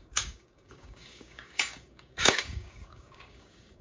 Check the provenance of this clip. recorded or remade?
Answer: remade